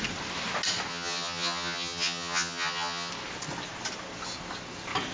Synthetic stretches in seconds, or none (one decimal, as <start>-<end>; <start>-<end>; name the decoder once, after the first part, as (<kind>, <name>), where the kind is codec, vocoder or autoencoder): 0.9-3.1 (vocoder, HiFi-GAN)